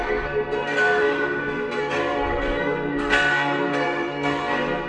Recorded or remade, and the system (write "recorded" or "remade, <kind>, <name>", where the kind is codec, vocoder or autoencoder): remade, codec, SNAC